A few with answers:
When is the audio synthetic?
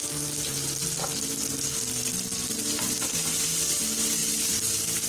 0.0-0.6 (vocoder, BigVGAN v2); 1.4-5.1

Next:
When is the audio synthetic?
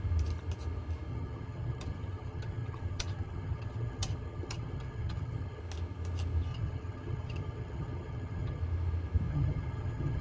1.1-5.6 (vocoder, HiFi-GAN); 6.5-8.6; 9.3-10.2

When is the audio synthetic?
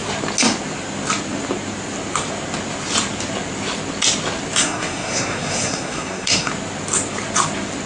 4.6-6.5 (codec, SNAC)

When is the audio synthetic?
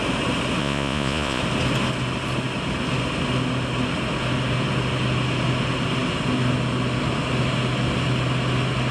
0.6-1.4 (vocoder, Vocos)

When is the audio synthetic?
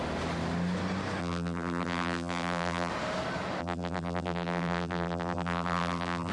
1.2-2.9 (vocoder, BigVGAN v2); 3.6-6.3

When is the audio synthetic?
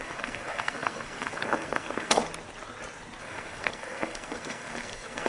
0.0-2.2 (codec, SNAC); 3.2-5.3